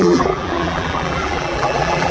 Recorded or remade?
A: remade